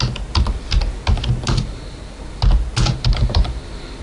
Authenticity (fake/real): real